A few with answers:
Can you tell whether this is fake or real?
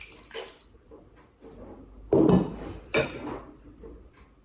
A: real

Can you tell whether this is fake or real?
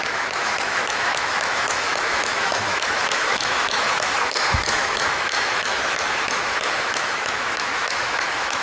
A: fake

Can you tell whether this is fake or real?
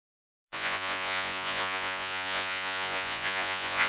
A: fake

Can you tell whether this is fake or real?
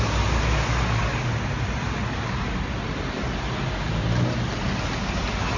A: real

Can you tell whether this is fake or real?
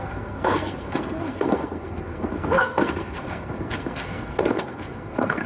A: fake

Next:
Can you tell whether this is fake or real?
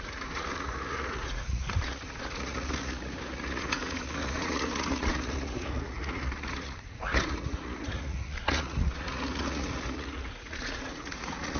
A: fake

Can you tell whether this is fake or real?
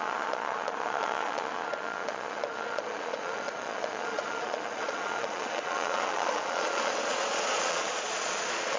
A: fake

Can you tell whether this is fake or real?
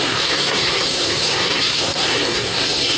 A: fake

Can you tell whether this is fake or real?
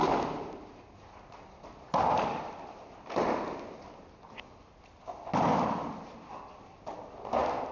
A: real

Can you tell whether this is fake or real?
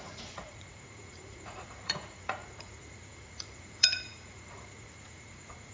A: fake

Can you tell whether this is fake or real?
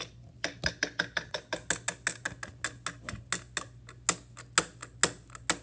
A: real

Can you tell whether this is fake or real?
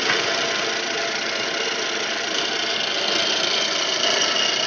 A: real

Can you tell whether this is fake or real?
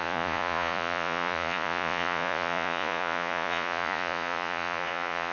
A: fake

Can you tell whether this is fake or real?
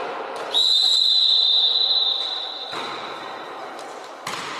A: fake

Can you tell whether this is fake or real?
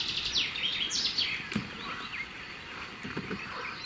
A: real